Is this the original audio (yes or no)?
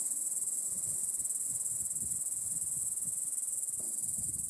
yes